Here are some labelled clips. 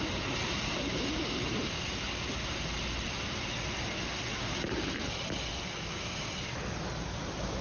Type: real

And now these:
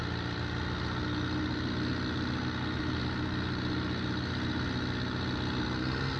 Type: real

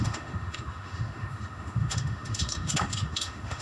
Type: fake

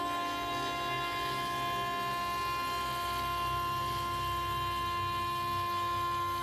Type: real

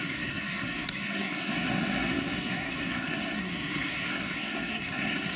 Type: fake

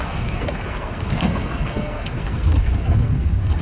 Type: fake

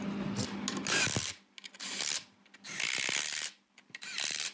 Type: real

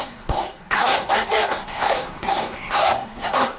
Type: fake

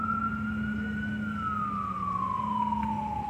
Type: real